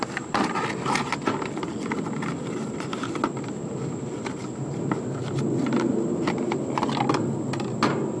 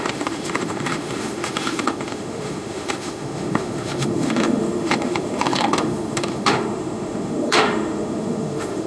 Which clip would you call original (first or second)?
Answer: first